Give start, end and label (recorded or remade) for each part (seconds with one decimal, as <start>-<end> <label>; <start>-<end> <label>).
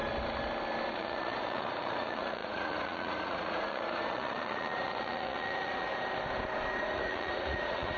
0.0-0.9 recorded; 0.9-5.9 remade; 5.9-6.7 recorded; 6.7-8.0 remade